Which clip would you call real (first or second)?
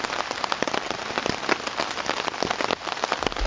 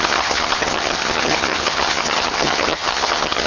first